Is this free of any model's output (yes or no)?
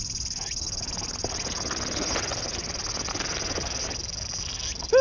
yes